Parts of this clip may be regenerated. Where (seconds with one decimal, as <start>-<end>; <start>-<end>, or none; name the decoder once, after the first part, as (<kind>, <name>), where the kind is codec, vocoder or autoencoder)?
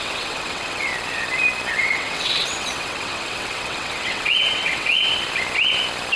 0.0-0.9 (vocoder, WaveNeXt); 1.8-5.1